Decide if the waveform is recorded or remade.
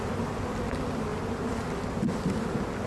recorded